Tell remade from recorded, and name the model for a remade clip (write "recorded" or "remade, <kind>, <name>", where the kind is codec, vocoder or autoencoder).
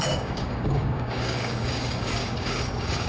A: remade, codec, DAC